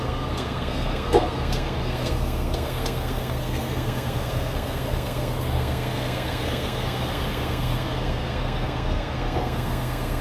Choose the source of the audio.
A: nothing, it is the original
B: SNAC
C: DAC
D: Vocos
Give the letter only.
B